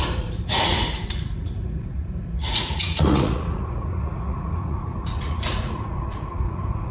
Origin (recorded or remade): remade